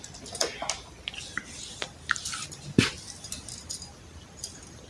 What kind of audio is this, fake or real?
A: real